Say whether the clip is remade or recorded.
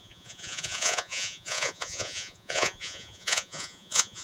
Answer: remade